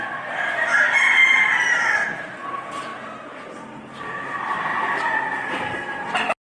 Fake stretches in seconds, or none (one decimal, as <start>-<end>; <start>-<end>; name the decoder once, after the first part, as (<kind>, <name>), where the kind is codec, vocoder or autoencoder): none